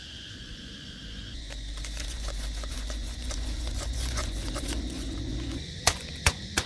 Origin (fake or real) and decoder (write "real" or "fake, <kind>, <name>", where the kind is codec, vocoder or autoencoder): fake, vocoder, Vocos